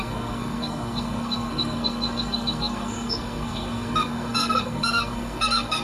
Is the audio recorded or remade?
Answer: remade